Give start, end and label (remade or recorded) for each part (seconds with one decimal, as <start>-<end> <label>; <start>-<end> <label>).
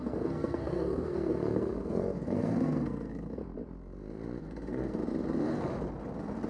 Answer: 0.0-3.4 remade; 3.4-4.4 recorded; 4.4-5.0 remade; 5.0-6.5 recorded